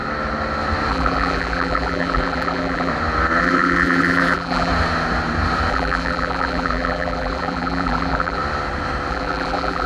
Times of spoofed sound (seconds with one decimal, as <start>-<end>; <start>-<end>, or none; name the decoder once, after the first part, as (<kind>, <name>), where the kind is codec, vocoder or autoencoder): 0.9-2.9 (vocoder, BigVGAN v2); 3.4-4.7; 5.7-8.4; 9.1-9.9